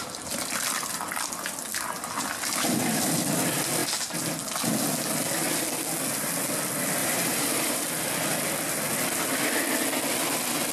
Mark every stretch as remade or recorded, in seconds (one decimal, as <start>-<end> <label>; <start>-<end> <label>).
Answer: 0.0-7.0 recorded; 7.0-7.8 remade; 7.8-10.7 recorded